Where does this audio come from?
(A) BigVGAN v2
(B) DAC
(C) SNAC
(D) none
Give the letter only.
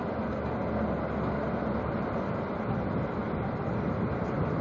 D